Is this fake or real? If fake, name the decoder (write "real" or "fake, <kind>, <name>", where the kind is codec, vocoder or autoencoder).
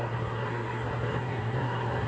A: fake, codec, SNAC